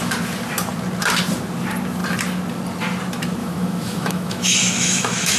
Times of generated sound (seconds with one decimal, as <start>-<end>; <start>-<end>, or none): 3.4-5.4